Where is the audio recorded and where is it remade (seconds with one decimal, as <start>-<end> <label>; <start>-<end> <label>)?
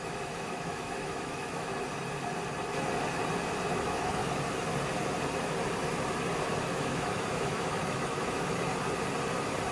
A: 0.0-1.7 remade; 1.7-3.7 recorded; 3.7-4.2 remade; 4.2-6.7 recorded; 6.7-8.7 remade; 8.7-9.7 recorded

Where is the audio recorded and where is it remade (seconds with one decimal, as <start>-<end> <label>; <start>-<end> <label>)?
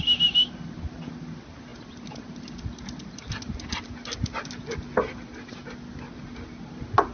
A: 0.0-7.1 recorded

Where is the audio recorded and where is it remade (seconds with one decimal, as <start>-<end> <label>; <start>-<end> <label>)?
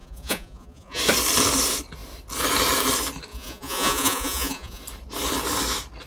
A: 0.0-1.0 remade; 1.0-3.3 recorded; 3.3-4.8 remade; 4.8-6.1 recorded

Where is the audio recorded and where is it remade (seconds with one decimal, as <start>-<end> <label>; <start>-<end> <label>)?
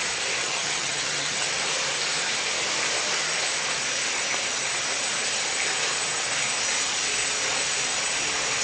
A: 0.0-0.4 recorded; 0.4-1.6 remade; 1.6-8.6 recorded